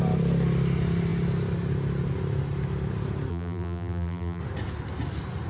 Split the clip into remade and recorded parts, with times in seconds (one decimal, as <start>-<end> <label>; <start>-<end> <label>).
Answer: 0.0-3.3 recorded; 3.3-4.4 remade; 4.4-5.5 recorded